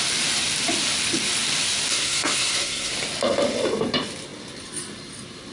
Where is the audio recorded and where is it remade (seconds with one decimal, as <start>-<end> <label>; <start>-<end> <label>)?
0.0-1.9 recorded; 1.9-2.9 remade; 2.9-5.5 recorded